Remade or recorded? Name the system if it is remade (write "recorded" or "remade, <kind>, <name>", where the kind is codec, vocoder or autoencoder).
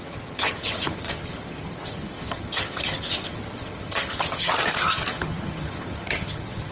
remade, vocoder, HiFi-GAN